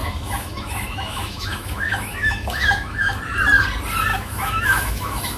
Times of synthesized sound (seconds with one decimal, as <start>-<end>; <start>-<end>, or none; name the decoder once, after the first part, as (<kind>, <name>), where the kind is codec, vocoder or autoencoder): 0.0-3.2 (autoencoder, DAC-VAE); 4.1-5.4